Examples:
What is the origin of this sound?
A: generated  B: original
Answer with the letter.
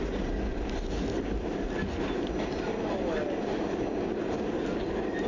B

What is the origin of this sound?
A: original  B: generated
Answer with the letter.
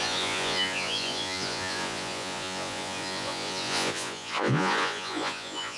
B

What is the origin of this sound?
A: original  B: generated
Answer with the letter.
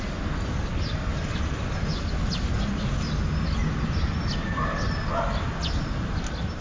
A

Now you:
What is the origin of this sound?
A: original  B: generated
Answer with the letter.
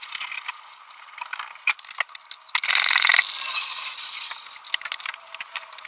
A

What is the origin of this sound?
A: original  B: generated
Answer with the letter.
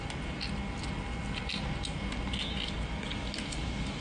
A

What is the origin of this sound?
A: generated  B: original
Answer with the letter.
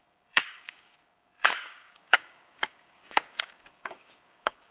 A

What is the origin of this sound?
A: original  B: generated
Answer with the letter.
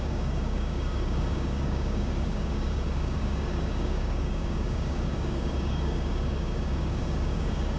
B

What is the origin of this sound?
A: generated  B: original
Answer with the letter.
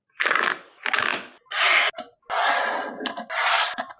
B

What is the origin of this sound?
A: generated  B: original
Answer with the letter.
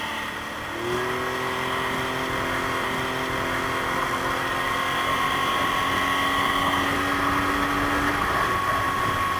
B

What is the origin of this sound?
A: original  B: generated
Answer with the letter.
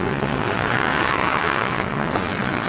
B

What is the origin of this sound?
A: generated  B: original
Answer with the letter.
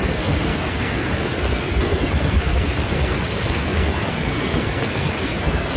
A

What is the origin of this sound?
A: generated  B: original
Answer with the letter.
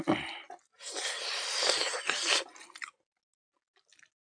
B